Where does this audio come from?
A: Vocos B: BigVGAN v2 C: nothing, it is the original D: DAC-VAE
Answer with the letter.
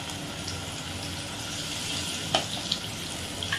C